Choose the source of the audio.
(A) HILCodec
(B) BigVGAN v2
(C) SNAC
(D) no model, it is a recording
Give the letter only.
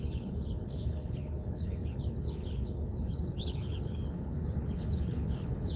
A